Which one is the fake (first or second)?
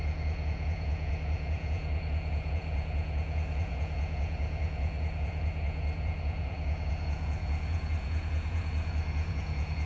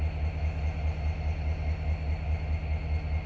first